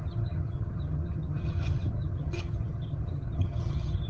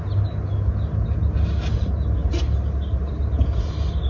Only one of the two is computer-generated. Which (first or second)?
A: first